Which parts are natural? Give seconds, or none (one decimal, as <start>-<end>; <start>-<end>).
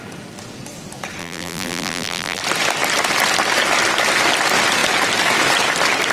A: 0.0-1.2; 2.4-6.1